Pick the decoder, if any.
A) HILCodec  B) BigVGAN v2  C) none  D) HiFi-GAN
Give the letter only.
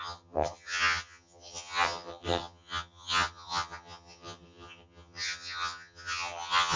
D